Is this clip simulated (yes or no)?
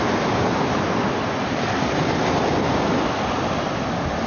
no